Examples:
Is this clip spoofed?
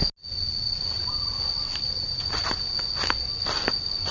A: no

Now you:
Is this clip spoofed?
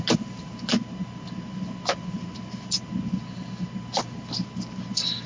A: no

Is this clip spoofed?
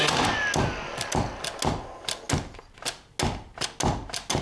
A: no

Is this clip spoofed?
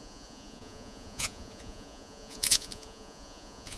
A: yes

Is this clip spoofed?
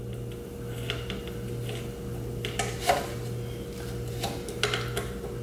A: no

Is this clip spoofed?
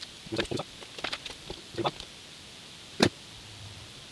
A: no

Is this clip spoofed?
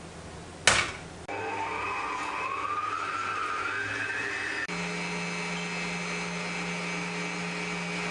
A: no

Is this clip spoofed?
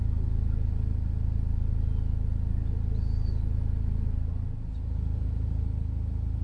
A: no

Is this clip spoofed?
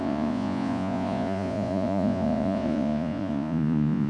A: yes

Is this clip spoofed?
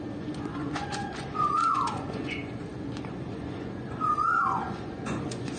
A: yes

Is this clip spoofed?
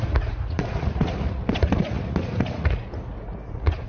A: yes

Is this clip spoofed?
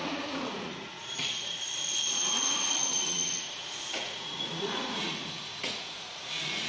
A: yes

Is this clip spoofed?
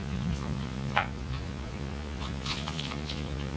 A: yes